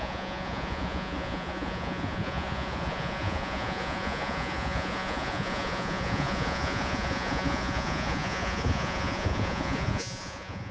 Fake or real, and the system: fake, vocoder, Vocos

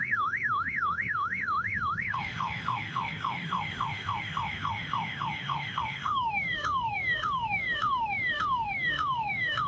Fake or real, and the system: fake, autoencoder, DAC-VAE